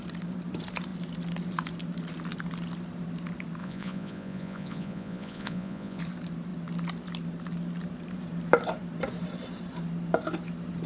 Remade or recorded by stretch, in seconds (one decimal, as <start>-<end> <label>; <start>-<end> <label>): 0.0-3.6 recorded; 3.6-6.0 remade; 6.0-10.9 recorded